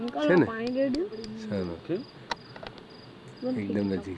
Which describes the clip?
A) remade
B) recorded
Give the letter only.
B